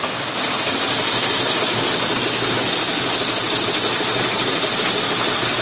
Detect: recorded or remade recorded